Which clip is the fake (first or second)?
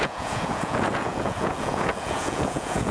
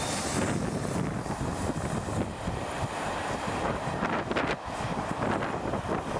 first